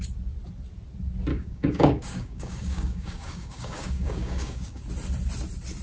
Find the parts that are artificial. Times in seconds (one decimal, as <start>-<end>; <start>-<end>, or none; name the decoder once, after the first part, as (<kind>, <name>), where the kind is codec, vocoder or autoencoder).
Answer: 1.3-4.8 (codec, DAC)